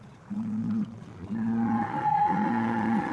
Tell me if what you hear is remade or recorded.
remade